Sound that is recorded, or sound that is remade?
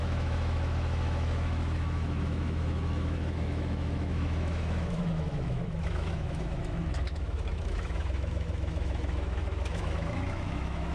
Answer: remade